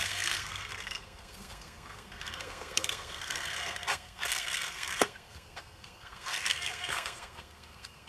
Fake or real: fake